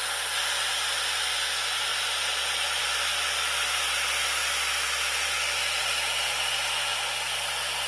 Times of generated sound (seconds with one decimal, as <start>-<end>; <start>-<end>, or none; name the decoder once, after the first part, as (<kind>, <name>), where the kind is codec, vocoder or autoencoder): none